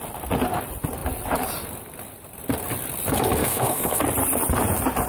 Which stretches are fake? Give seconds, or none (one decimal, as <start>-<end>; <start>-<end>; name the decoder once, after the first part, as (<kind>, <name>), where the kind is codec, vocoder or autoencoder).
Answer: 3.4-4.0 (codec, SNAC)